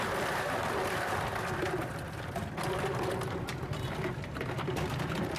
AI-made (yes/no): yes